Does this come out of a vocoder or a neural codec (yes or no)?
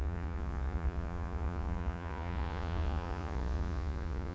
yes